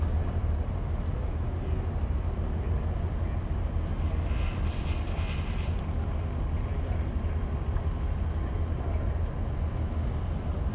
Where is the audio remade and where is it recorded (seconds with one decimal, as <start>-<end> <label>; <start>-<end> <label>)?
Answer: 0.0-10.7 recorded